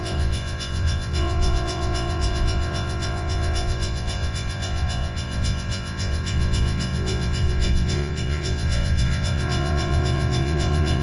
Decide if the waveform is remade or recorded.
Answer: remade